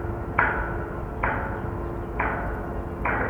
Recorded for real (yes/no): yes